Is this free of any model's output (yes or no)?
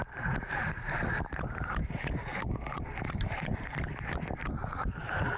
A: yes